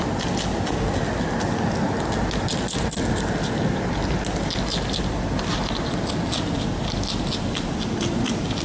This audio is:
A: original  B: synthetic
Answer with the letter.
A